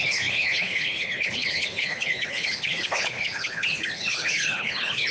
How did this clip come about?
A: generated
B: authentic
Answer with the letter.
A